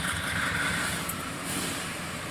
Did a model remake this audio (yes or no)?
no